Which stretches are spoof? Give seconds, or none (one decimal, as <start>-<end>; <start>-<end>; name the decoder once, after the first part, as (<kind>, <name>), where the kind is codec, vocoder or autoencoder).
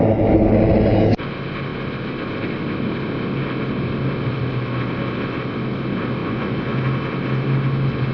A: 6.2-6.8 (vocoder, Vocos)